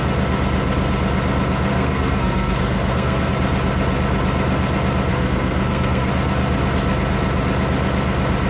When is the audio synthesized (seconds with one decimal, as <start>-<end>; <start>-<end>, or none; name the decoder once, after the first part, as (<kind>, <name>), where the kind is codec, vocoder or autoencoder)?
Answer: 1.7-3.3 (codec, SNAC); 5.1-6.1